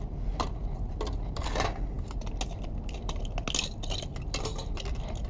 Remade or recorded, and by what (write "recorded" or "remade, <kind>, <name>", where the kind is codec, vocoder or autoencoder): recorded